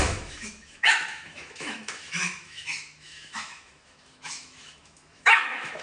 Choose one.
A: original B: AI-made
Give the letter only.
B